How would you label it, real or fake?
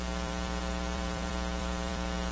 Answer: fake